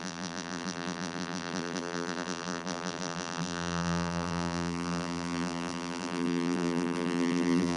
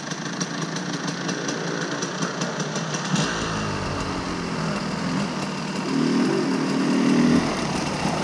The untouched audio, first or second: second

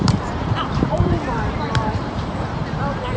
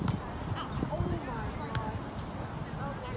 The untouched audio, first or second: second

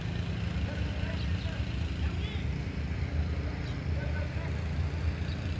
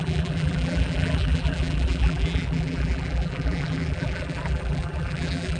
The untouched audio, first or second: first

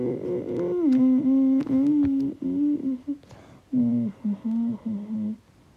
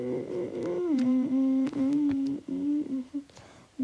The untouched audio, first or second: first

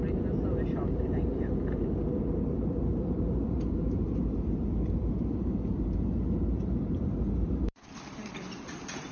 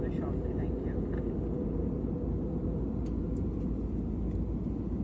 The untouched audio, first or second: second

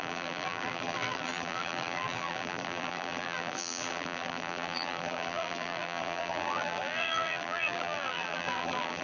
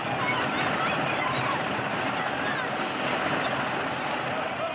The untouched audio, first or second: second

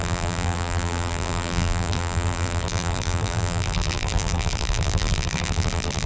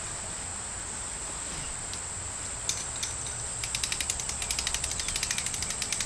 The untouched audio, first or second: second